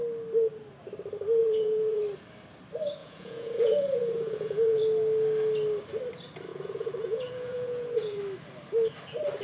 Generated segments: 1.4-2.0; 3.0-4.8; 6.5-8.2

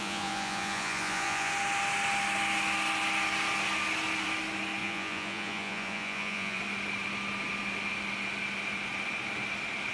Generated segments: 0.0-1.5; 4.8-6.6

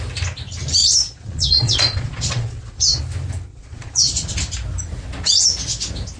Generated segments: 0.8-3.0; 3.5-4.4